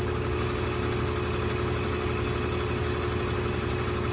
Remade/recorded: recorded